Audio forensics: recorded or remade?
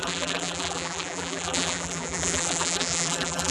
remade